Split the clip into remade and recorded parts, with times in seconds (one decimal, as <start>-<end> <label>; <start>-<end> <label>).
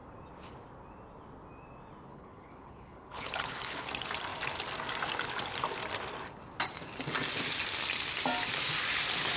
0.0-2.1 recorded; 2.1-3.9 remade; 3.9-9.4 recorded